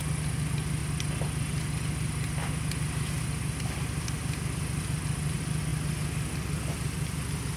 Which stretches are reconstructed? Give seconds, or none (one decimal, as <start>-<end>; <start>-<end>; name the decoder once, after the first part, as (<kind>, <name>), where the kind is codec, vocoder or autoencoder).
0.0-0.8 (vocoder, BigVGAN v2); 5.3-5.7